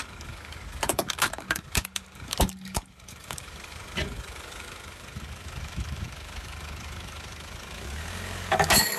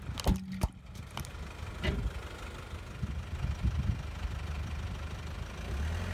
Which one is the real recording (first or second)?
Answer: second